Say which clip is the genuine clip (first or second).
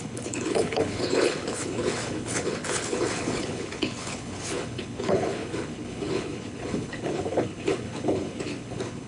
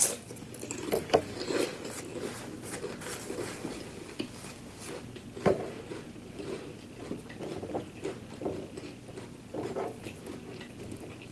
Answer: second